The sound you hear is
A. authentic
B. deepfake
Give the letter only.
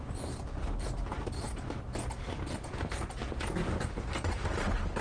A